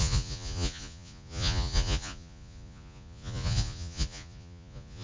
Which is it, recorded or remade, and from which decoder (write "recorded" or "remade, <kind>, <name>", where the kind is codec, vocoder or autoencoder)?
remade, vocoder, Vocos